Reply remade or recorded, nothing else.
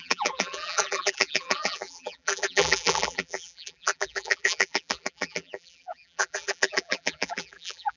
remade